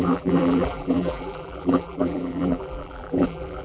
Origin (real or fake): fake